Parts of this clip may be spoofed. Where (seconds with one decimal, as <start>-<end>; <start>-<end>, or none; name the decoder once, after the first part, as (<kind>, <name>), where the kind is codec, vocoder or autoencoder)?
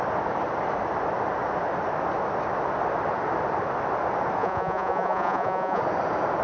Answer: 4.4-5.8 (vocoder, Vocos)